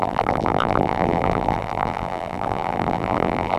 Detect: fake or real fake